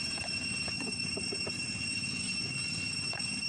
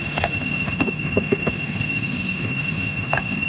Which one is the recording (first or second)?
first